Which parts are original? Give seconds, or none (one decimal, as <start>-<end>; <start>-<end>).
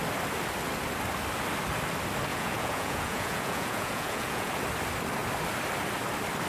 0.0-2.3; 4.5-6.5